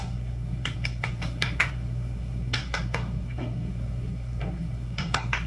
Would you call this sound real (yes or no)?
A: no